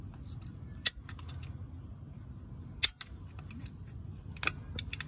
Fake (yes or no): no